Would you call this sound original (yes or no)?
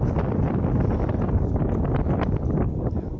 yes